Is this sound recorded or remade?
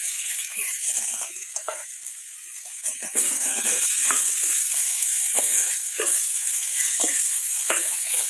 remade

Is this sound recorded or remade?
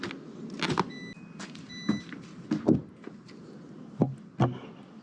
recorded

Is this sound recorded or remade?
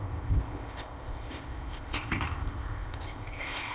remade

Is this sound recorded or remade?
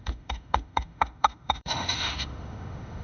remade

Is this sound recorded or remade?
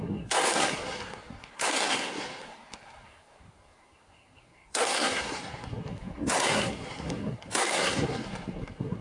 remade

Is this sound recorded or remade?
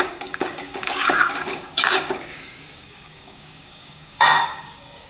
remade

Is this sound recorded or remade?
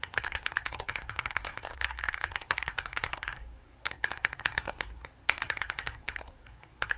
remade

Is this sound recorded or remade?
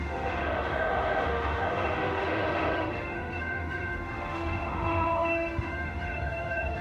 remade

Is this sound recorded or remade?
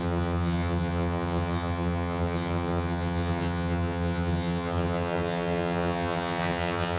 remade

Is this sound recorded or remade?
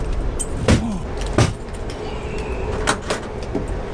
recorded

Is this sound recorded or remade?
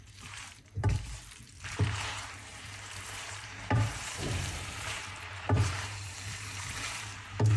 remade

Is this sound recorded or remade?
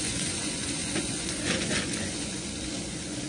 remade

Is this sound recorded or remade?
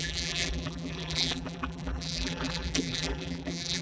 remade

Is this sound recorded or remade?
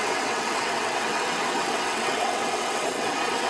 remade